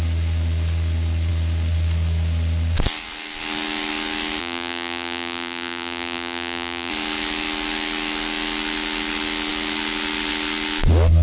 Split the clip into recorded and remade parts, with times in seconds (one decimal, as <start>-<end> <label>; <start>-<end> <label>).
0.0-4.4 recorded; 4.4-6.9 remade; 6.9-11.2 recorded